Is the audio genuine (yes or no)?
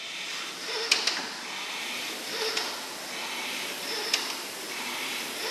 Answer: yes